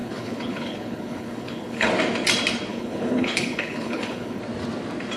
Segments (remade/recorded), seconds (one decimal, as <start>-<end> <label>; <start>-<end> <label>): 0.0-1.9 remade; 1.9-2.7 recorded; 2.7-4.4 remade; 4.4-5.2 recorded